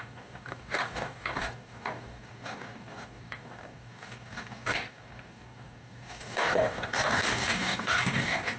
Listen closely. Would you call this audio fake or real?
fake